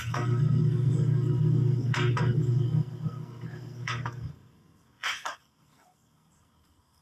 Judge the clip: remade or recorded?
remade